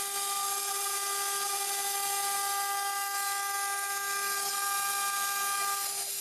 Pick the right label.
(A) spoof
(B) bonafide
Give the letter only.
B